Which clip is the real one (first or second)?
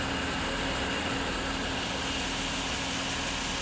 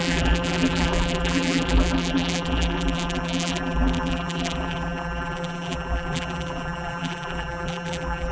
first